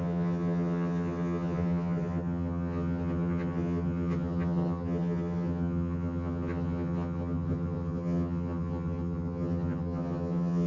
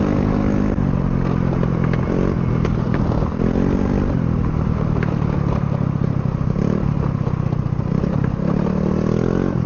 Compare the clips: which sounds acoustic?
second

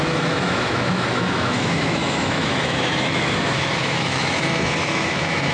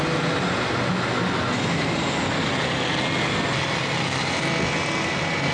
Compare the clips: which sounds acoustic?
second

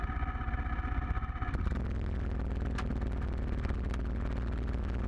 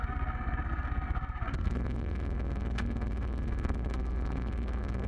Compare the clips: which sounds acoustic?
first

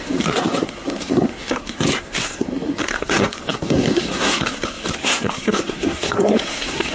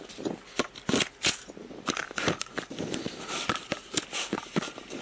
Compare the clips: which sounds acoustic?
second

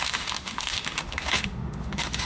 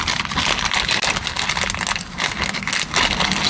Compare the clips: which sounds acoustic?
second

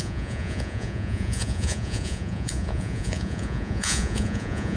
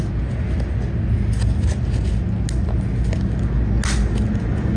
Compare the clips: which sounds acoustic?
second